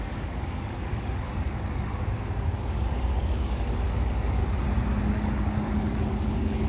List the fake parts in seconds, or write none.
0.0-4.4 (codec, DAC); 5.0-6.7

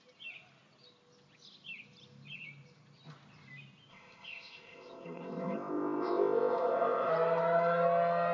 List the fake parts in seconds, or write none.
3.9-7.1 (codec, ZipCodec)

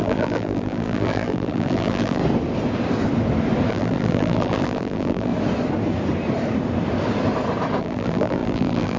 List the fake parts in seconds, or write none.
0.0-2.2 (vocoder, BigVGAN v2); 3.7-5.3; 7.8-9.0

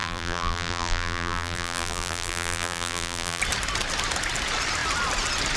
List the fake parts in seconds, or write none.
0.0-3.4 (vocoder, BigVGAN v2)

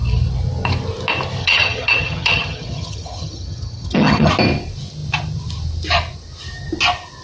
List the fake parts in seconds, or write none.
1.4-4.3 (vocoder, HiFi-GAN)

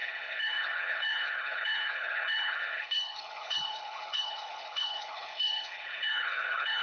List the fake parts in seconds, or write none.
0.0-6.8 (codec, HILCodec)

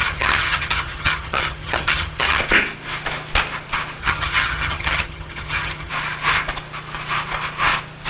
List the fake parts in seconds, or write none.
0.0-2.4 (vocoder, HiFi-GAN); 4.0-5.9